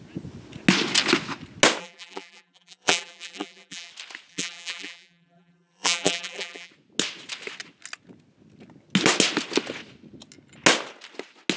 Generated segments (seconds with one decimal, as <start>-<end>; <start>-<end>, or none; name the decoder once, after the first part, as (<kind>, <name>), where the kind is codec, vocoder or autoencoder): 1.8-3.9 (vocoder, BigVGAN v2); 4.3-6.7